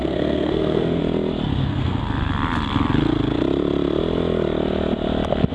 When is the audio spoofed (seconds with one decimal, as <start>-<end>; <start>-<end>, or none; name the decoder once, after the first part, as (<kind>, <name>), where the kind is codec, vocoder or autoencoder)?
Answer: 0.0-1.0 (codec, SNAC); 1.6-2.0